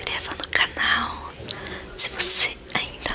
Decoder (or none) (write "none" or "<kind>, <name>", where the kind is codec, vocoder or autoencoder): vocoder, BigVGAN v2